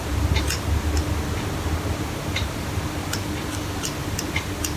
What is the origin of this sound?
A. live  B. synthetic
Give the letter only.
A